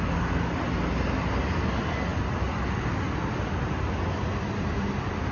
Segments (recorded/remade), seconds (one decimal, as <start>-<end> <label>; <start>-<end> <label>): 0.0-5.3 recorded